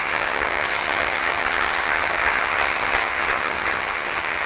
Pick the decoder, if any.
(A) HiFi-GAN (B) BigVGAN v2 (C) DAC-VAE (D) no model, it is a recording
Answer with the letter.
A